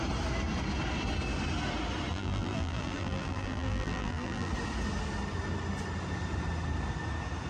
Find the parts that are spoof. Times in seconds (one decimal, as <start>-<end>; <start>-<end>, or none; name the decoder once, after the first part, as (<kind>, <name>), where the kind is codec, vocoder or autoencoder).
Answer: 2.1-4.5 (vocoder, BigVGAN v2)